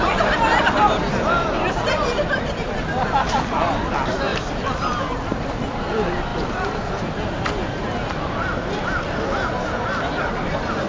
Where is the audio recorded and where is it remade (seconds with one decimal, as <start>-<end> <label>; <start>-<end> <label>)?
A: 0.0-10.9 recorded